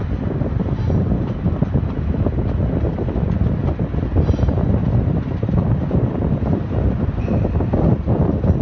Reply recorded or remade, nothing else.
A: recorded